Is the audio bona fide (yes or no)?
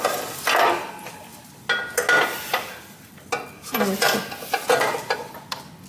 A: yes